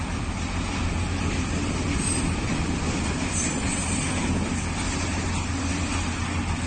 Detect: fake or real real